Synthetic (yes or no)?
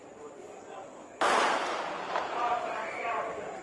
yes